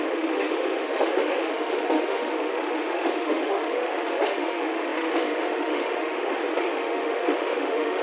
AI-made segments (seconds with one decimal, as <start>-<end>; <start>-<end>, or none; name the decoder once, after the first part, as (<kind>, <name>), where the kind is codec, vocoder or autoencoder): 0.0-8.0 (autoencoder, DAC-VAE)